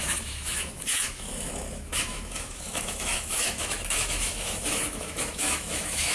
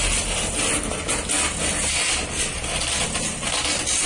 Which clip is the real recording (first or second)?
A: second